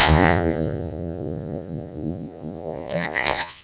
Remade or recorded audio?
remade